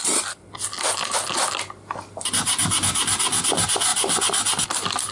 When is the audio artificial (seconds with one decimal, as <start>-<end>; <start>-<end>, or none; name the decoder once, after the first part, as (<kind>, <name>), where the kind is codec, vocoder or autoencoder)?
none